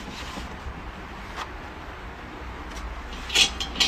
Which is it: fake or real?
real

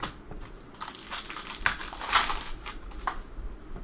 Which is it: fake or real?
real